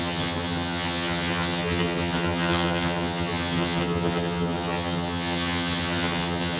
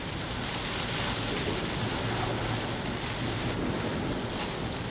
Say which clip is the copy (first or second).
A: first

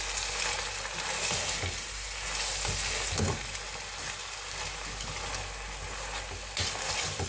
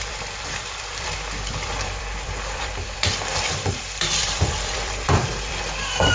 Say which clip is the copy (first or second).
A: second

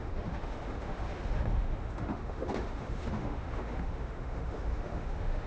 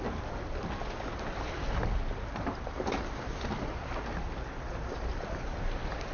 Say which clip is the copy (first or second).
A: first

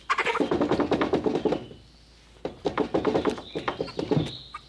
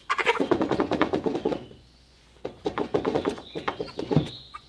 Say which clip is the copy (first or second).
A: second